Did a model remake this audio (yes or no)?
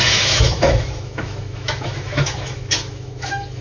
yes